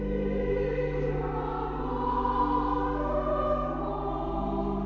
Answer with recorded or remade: recorded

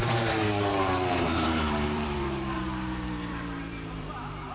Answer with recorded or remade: remade